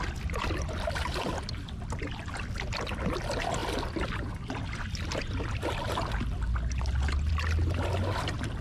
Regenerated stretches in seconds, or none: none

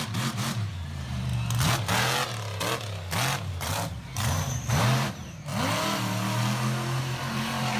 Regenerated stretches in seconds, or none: 0.0-1.3 (vocoder, BigVGAN v2); 3.5-5.5; 7.0-7.8

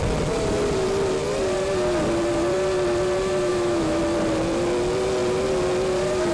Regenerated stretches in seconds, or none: 3.5-4.0 (autoencoder, DAC-VAE)

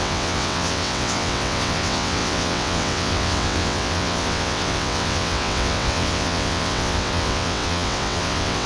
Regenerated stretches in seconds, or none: 0.0-8.7 (vocoder, WaveNeXt)